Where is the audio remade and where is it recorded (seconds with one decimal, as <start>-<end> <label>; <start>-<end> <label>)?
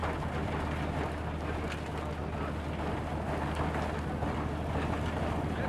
0.0-5.7 recorded